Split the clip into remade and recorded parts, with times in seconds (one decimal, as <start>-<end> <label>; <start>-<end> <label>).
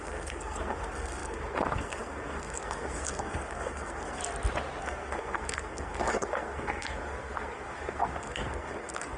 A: 0.0-4.2 remade; 4.2-4.8 recorded; 4.8-9.2 remade